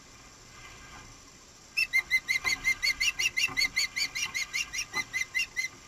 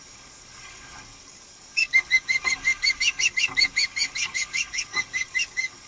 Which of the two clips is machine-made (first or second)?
second